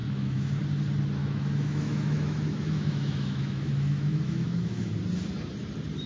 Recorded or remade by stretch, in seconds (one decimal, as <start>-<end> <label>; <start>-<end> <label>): 0.0-0.6 remade; 0.6-1.2 recorded; 1.2-4.9 remade; 4.9-6.1 recorded